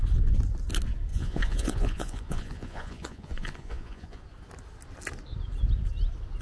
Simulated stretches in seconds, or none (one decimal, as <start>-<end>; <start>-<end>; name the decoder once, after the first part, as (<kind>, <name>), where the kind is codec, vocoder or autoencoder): 1.1-4.2 (vocoder, Vocos)